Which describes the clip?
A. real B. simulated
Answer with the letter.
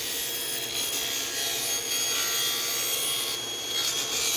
A